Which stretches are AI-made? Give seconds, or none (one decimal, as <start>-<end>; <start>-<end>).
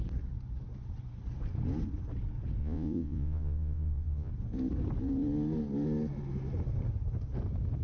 2.6-4.3